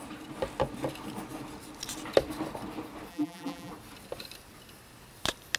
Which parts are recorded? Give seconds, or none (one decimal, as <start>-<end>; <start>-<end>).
0.0-3.1; 3.7-5.6